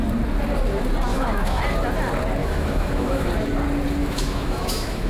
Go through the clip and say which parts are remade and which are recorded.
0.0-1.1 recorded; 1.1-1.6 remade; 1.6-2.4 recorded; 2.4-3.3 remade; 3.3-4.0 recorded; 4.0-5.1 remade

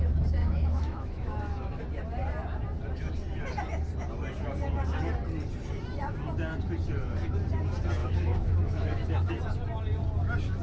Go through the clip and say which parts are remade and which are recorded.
0.0-0.4 recorded; 0.4-1.8 remade; 1.8-8.0 recorded; 8.0-9.3 remade; 9.3-10.6 recorded